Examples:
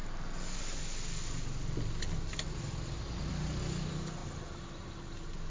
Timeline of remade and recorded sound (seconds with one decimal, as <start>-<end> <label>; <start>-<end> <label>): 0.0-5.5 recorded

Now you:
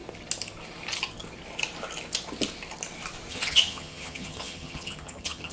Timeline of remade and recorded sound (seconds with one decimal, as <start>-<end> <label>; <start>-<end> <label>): 0.0-3.3 recorded; 3.3-5.5 remade

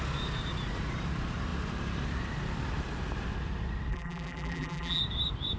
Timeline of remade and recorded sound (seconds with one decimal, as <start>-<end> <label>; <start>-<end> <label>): 0.0-3.9 recorded; 3.9-5.0 remade; 5.0-5.6 recorded

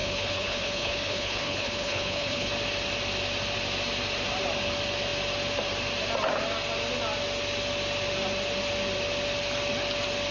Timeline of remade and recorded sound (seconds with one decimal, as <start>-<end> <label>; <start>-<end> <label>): 0.0-2.5 remade; 2.5-10.3 recorded

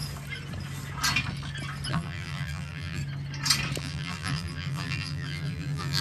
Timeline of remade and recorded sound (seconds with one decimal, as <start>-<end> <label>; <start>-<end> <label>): 0.0-1.9 recorded; 1.9-3.0 remade; 3.0-3.8 recorded; 3.8-6.0 remade

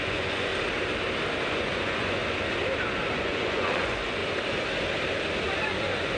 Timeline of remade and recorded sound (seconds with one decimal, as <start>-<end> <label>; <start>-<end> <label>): 0.0-0.5 remade; 0.5-1.5 recorded; 1.5-2.2 remade; 2.2-3.1 recorded; 3.1-4.2 remade; 4.2-5.6 recorded; 5.6-6.2 remade

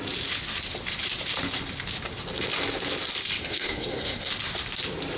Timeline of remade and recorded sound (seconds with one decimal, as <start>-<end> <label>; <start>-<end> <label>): 0.0-3.4 recorded; 3.4-4.3 remade; 4.3-5.2 recorded

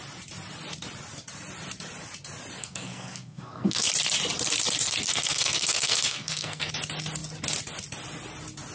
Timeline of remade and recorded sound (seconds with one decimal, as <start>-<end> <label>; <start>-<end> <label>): 0.0-2.6 recorded; 2.6-3.9 remade; 3.9-5.1 recorded; 5.1-6.7 remade; 6.7-8.7 recorded